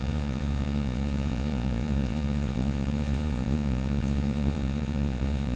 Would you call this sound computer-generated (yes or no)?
yes